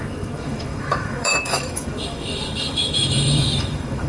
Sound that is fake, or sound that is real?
fake